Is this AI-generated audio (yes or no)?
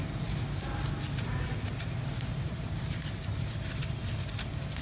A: no